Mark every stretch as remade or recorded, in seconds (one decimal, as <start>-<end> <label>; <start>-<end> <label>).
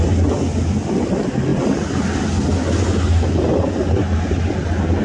0.0-5.0 recorded